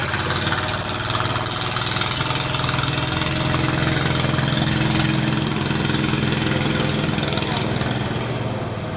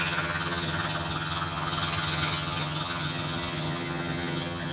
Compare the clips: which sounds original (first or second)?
first